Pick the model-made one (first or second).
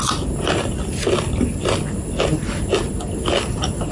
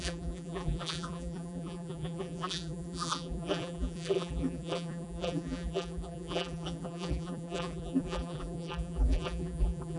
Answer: second